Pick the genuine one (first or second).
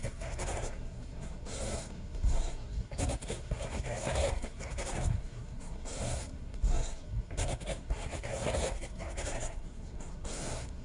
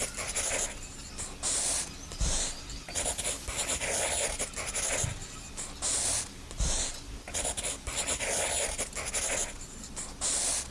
second